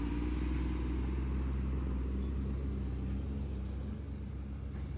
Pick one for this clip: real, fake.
real